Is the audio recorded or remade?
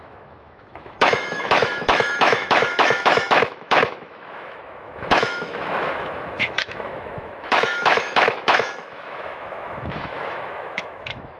remade